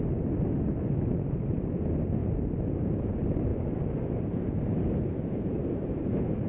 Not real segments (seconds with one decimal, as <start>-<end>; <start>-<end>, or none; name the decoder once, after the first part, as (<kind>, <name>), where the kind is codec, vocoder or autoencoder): 2.2-3.1 (vocoder, BigVGAN v2); 3.5-6.5